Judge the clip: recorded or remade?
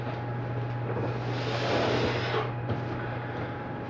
remade